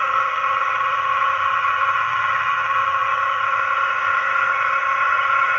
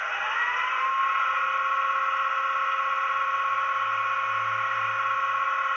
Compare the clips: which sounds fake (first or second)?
first